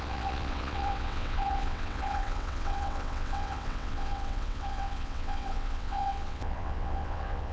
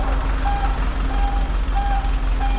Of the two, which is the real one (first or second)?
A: second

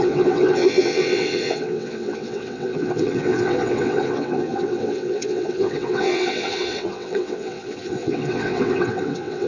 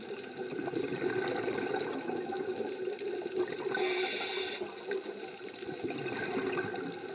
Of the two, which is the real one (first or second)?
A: second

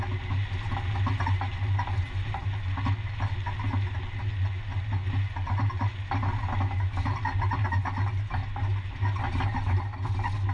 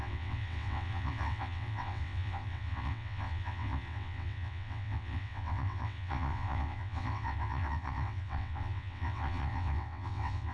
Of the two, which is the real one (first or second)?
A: first